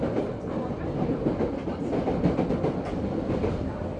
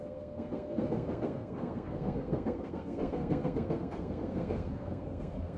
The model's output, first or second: second